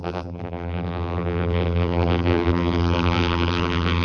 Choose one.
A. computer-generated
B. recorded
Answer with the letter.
A